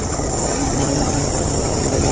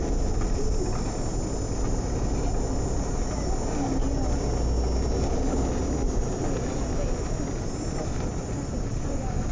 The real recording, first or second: second